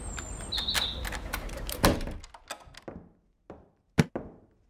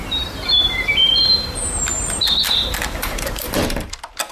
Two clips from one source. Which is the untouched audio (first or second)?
first